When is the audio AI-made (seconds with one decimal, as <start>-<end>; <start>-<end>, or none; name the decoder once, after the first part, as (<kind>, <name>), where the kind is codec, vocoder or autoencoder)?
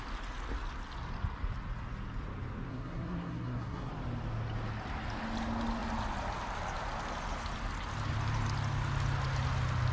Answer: 2.7-3.9 (codec, SNAC)